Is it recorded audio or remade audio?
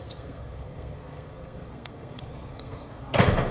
remade